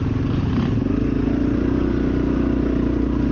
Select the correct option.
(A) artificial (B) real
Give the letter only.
B